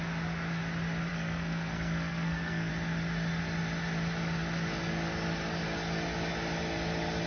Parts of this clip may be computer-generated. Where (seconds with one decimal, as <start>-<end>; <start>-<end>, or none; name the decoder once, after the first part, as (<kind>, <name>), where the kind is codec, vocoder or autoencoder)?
1.1-2.7 (codec, SNAC)